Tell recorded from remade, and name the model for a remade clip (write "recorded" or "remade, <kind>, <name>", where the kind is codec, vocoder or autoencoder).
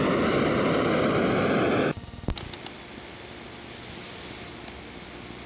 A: remade, vocoder, BigVGAN v2